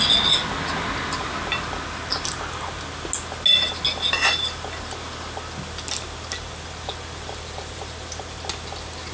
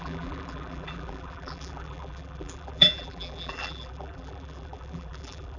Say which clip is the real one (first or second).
first